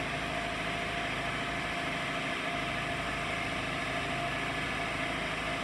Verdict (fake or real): real